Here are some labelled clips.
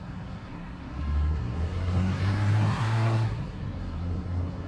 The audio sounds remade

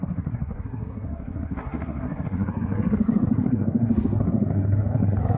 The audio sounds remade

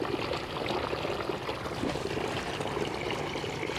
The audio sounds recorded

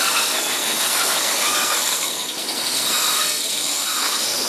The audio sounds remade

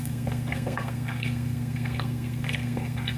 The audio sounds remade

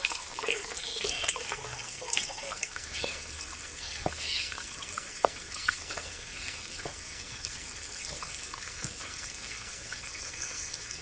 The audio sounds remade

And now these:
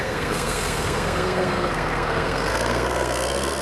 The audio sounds remade